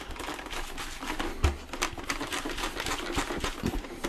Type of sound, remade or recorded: recorded